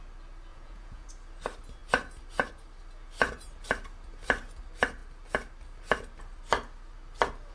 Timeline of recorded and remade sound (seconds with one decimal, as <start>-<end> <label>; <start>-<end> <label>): 0.0-0.5 recorded; 0.5-1.1 remade; 1.1-7.5 recorded